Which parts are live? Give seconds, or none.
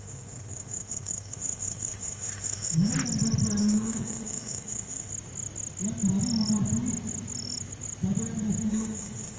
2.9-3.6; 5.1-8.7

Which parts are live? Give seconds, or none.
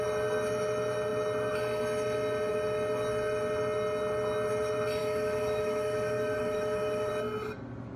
0.0-5.0; 7.1-8.0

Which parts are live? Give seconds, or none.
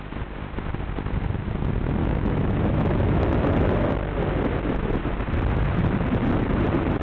0.0-2.0; 3.7-7.0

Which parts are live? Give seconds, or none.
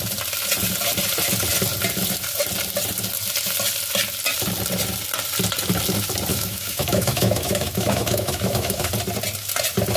0.0-6.3; 8.9-10.0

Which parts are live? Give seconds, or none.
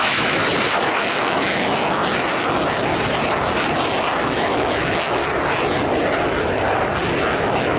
0.4-1.0; 2.0-4.2; 5.2-7.2